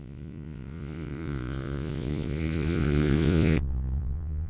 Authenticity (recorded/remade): remade